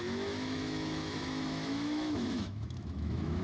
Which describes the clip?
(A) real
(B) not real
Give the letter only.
B